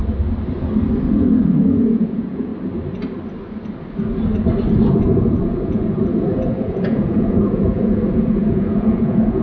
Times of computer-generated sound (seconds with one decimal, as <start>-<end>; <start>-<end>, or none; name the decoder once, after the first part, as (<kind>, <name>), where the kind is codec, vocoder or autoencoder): 1.1-2.5 (vocoder, Vocos); 4.9-9.4